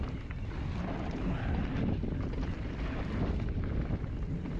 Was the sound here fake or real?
real